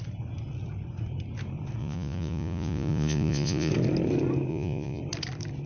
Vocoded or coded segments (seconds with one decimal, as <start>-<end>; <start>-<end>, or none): 1.8-3.7; 4.5-5.0